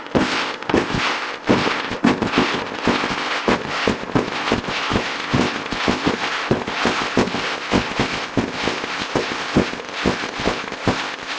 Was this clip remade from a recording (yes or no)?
yes